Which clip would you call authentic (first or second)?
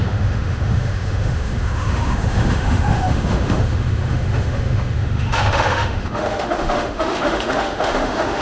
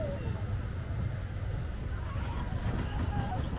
second